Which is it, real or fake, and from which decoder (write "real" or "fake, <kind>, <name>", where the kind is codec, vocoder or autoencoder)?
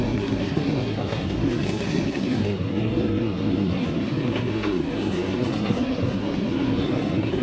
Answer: fake, codec, SNAC